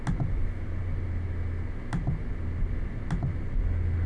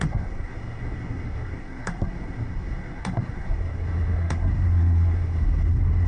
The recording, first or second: first